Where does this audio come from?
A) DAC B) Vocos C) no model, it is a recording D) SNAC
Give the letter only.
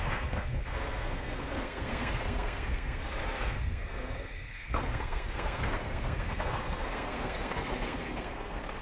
D